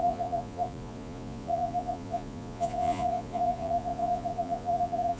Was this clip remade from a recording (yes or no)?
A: yes